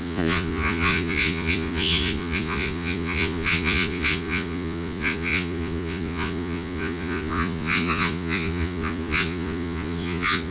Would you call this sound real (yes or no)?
no